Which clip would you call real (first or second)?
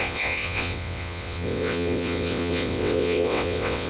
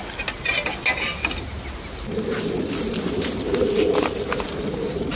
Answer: second